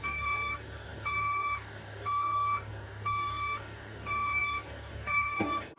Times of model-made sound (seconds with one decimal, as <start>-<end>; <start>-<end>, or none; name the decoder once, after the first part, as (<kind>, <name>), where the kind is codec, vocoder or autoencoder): 0.0-5.8 (codec, DAC)